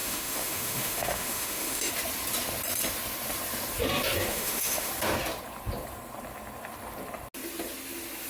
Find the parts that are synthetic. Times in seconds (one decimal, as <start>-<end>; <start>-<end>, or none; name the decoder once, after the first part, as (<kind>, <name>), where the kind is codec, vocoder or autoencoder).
0.0-1.9 (autoencoder, DAC-VAE); 4.3-4.9